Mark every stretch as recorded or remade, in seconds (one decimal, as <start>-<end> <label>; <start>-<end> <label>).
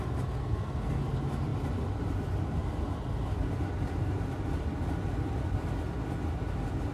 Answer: 0.0-0.4 recorded; 0.4-1.0 remade; 1.0-6.9 recorded